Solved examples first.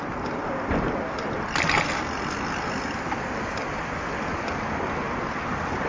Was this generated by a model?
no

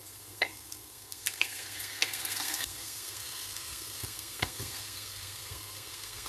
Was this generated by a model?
yes